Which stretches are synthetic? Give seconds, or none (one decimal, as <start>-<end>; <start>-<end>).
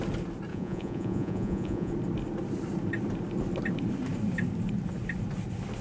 0.5-1.9